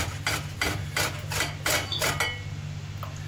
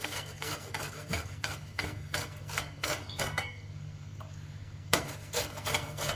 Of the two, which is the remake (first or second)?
second